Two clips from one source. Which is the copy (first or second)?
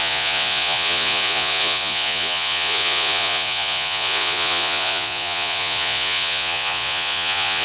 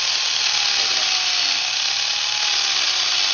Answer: first